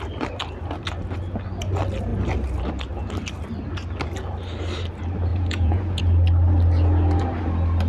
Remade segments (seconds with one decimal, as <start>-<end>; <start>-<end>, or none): 5.3-6.0